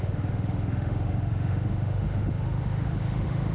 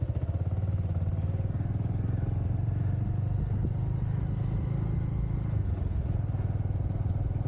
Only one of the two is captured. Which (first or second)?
second